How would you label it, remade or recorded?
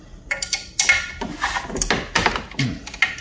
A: recorded